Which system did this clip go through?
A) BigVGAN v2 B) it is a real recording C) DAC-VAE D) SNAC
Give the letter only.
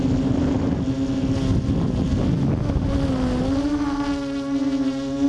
B